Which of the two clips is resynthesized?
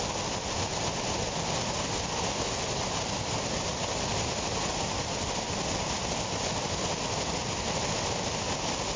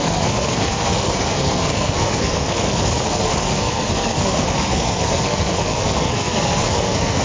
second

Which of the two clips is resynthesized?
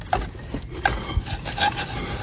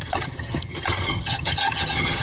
second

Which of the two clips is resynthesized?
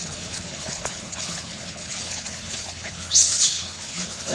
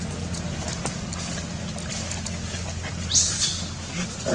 first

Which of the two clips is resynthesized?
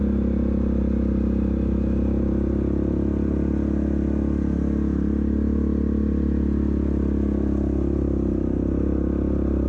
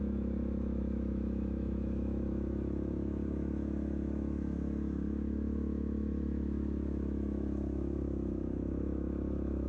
second